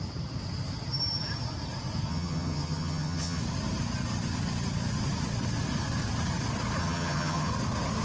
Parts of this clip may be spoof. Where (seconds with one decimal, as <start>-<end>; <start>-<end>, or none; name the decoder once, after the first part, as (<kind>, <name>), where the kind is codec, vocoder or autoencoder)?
2.1-3.4 (vocoder, HiFi-GAN); 6.8-7.5